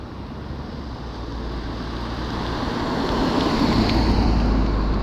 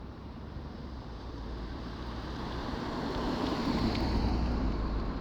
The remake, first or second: second